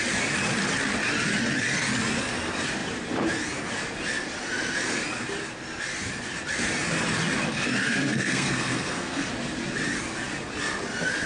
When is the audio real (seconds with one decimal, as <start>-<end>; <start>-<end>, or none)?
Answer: 0.0-7.8; 9.3-11.3